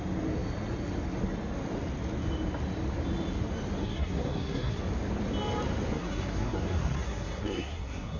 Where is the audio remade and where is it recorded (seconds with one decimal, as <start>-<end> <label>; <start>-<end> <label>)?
0.0-3.8 recorded; 3.8-4.8 remade; 4.8-5.9 recorded; 5.9-8.2 remade